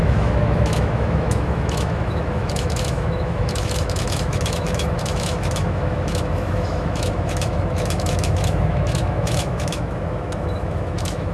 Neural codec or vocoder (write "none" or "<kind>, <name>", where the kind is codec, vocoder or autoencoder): autoencoder, DAC-VAE